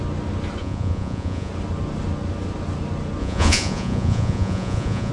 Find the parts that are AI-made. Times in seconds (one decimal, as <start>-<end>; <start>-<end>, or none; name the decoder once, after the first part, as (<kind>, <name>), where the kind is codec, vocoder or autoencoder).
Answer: 0.6-1.5 (vocoder, Vocos); 3.2-5.1